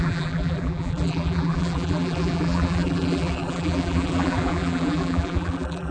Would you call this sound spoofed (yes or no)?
yes